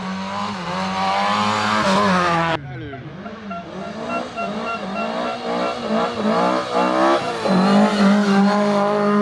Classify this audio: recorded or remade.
recorded